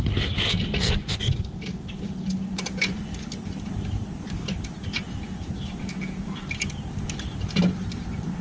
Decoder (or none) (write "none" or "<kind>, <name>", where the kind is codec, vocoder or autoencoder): none